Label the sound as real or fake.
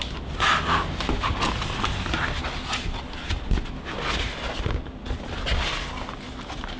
real